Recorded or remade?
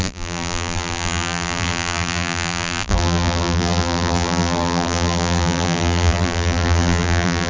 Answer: remade